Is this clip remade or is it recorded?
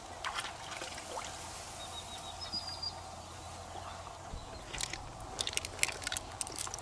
recorded